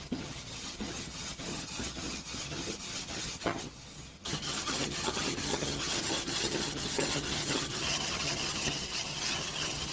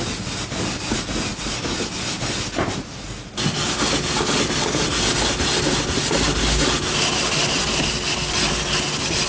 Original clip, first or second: second